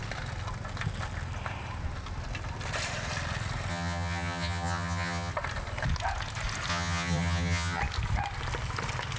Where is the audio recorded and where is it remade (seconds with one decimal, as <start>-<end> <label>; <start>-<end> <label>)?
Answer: 0.0-3.7 recorded; 3.7-5.3 remade; 5.3-6.7 recorded; 6.7-7.8 remade; 7.8-9.2 recorded